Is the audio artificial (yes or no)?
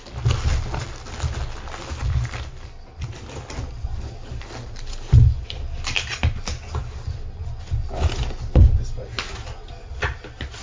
no